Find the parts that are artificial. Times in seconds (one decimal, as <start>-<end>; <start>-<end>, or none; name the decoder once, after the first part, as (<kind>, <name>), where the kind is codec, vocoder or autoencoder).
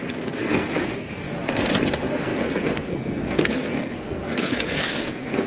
0.0-5.5 (codec, SNAC)